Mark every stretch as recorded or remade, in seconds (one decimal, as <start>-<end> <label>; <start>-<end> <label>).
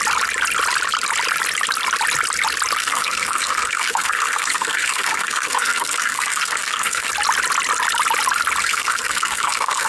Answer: 0.0-2.8 recorded; 2.8-7.1 remade; 7.1-8.6 recorded; 8.6-9.9 remade